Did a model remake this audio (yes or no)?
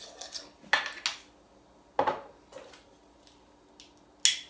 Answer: no